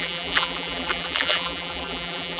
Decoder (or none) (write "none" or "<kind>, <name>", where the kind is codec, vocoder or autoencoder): vocoder, BigVGAN v2